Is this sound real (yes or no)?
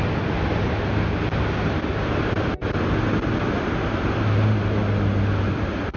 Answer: yes